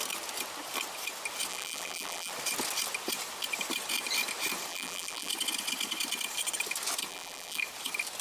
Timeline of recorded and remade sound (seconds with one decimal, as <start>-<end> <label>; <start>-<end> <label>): 0.0-1.5 recorded; 1.5-2.3 remade; 2.3-4.7 recorded; 4.7-5.3 remade; 5.3-7.1 recorded; 7.1-7.6 remade; 7.6-8.2 recorded